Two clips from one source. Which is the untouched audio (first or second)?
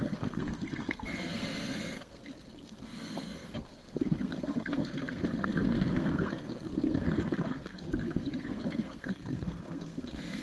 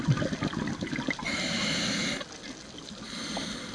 second